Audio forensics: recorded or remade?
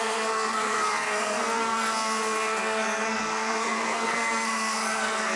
remade